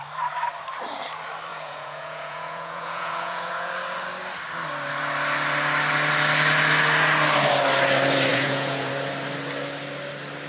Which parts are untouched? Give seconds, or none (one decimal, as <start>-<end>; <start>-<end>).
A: 0.0-1.5; 3.7-8.3; 8.9-10.5